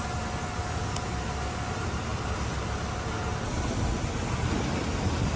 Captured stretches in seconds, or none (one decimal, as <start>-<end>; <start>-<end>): 0.0-5.4